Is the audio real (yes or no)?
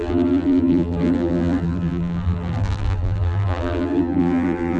no